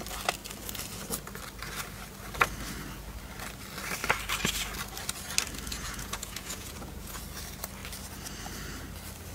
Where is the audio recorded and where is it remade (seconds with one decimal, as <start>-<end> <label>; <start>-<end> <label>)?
0.0-5.7 recorded; 5.7-7.2 remade; 7.2-9.3 recorded